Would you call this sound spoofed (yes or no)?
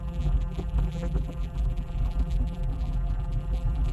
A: yes